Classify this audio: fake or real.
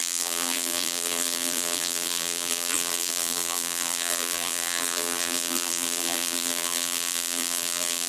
fake